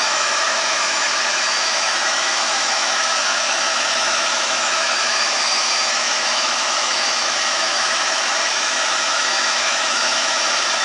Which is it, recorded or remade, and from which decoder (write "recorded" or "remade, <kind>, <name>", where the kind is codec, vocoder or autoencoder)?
remade, autoencoder, DAC-VAE